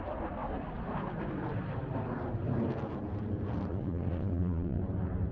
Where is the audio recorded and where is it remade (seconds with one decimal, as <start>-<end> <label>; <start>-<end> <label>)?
0.0-3.7 recorded; 3.7-4.8 remade; 4.8-5.3 recorded